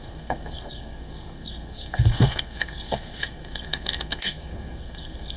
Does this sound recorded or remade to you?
remade